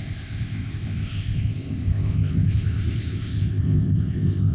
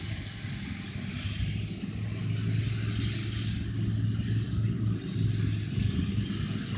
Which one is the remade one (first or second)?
first